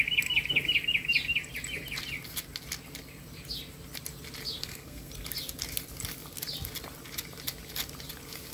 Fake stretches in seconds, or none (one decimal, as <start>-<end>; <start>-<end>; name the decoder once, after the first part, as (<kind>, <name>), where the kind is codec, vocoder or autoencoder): 4.6-5.1 (codec, SNAC)